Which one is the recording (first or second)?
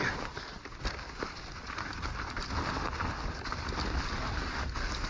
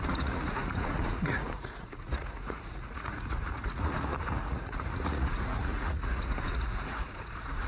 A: first